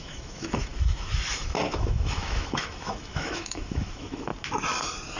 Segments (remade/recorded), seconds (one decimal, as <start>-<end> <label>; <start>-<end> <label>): 0.0-4.3 remade; 4.3-5.2 recorded